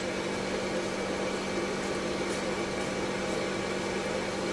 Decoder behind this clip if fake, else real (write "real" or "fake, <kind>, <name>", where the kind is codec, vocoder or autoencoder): real